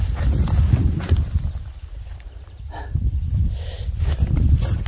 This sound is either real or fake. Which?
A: real